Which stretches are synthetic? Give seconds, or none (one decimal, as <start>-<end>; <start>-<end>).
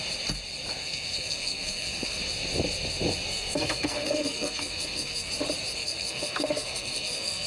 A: 0.8-2.2; 3.3-5.3; 5.8-7.5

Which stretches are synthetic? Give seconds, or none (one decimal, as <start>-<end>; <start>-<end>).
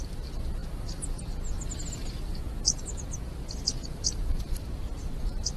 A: none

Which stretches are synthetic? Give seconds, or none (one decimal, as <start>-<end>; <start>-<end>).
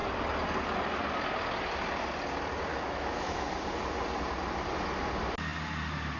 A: 2.7-3.5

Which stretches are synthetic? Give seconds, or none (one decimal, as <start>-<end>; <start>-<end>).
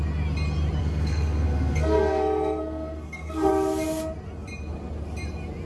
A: 0.8-3.5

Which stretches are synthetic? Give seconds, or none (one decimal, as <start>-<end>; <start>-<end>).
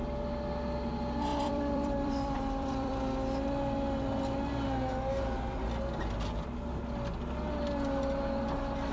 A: 1.3-3.0